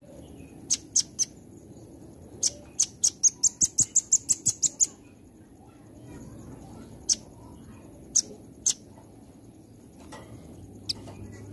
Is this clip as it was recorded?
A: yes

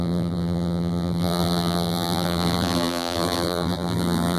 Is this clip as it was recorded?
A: no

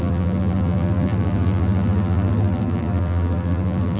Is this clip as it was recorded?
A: no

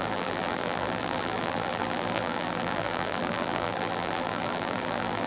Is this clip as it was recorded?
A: no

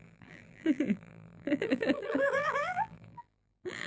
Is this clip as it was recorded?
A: no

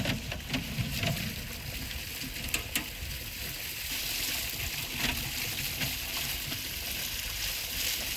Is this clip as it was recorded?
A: yes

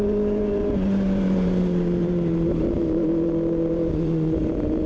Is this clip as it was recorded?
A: no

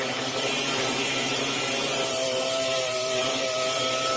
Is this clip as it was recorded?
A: no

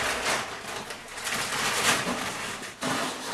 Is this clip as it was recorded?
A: no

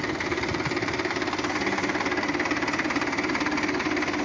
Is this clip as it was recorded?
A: no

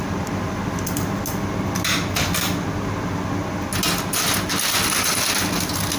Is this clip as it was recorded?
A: yes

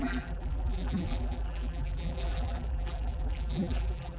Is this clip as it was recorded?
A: no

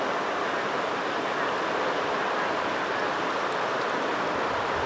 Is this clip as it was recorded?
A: yes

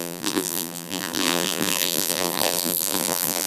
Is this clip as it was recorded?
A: no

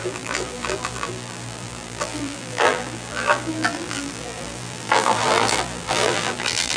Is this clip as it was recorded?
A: no